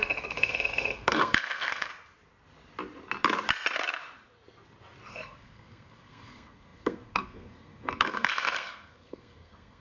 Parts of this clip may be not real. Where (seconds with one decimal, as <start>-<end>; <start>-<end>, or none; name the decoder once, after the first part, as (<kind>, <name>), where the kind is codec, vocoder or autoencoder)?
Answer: 0.0-1.9 (codec, SNAC); 5.1-9.8